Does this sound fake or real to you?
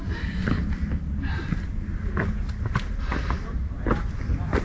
real